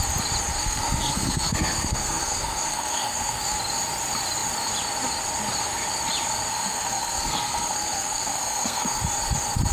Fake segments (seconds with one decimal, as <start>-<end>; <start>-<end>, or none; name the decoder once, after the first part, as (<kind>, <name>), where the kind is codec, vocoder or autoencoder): 0.6-3.6 (codec, SNAC); 6.5-9.0